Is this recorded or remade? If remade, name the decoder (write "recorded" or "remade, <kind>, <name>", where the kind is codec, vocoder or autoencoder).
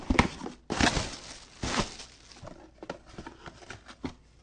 recorded